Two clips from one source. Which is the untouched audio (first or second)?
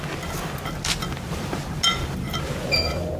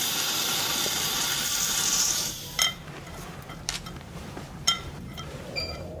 first